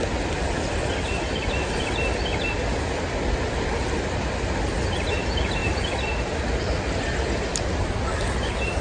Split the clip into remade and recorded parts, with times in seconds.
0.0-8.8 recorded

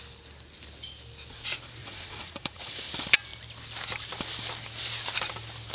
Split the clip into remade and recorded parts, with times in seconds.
0.0-1.8 recorded; 1.8-2.9 remade; 2.9-5.7 recorded

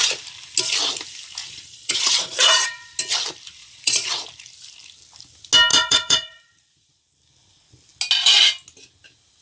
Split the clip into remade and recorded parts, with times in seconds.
0.0-1.4 recorded; 1.4-3.0 remade; 3.0-3.6 recorded; 3.6-4.1 remade; 4.1-5.7 recorded; 5.7-7.0 remade; 7.0-9.4 recorded

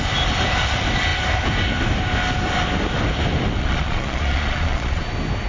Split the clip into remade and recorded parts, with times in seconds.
0.0-3.6 recorded; 3.6-5.0 remade; 5.0-5.5 recorded

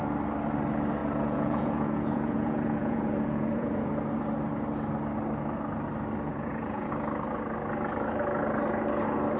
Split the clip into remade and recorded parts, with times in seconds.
0.0-1.0 recorded; 1.0-3.9 remade; 3.9-6.3 recorded; 6.3-6.9 remade; 6.9-9.4 recorded

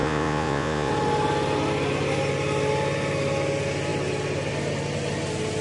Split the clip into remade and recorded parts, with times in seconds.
0.0-0.9 remade; 0.9-5.6 recorded